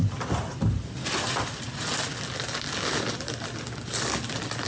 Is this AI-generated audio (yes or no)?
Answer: no